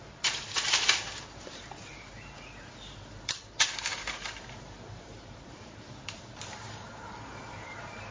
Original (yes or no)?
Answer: no